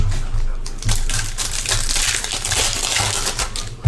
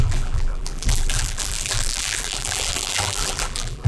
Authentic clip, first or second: first